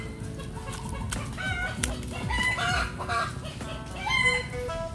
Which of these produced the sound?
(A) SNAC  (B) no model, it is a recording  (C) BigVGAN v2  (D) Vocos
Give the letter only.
B